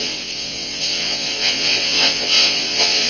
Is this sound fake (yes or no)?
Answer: yes